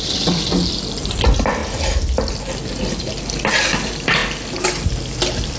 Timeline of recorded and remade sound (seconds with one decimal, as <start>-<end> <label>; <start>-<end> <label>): 0.0-5.6 recorded